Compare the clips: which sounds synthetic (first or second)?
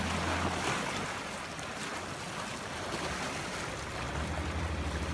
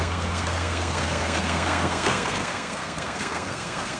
second